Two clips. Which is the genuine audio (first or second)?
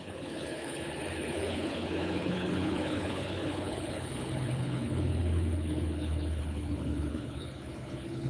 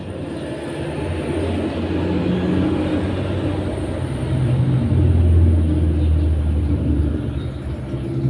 second